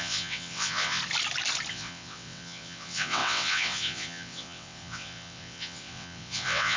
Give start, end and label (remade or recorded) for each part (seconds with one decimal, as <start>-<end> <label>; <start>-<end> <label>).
0.0-1.0 remade; 1.0-1.7 recorded; 1.7-6.8 remade